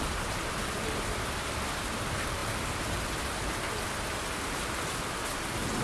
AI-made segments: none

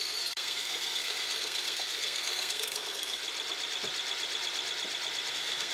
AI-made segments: 0.0-3.2 (codec, SNAC); 5.3-5.7

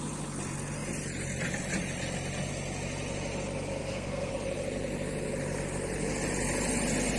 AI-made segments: 3.8-4.3 (codec, SNAC)